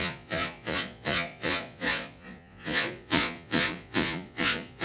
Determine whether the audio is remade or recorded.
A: remade